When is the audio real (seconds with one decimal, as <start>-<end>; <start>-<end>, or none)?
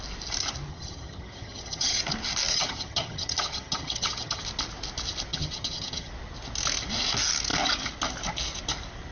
0.0-0.7; 2.0-2.5; 4.4-5.3; 6.1-9.1